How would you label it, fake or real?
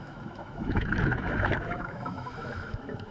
fake